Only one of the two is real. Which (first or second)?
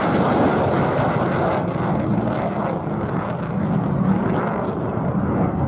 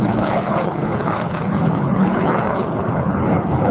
first